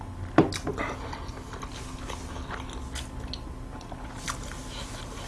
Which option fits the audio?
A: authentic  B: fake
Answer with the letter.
A